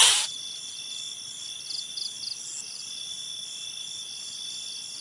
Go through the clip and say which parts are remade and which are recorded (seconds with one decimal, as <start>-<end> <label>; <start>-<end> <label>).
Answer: 0.0-5.0 recorded